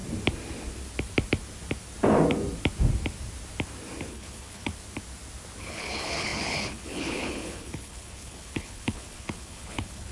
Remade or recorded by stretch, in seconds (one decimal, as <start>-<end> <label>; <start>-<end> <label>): 0.0-4.1 recorded; 4.1-4.7 remade; 4.7-5.6 recorded; 5.6-10.1 remade